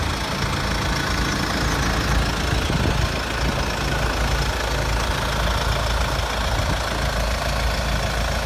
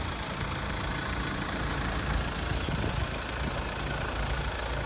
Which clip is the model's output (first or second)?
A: second